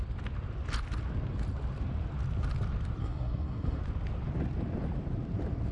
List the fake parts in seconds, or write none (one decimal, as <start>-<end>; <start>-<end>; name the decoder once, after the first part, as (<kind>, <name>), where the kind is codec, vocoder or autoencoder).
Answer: 3.0-3.8 (codec, SNAC)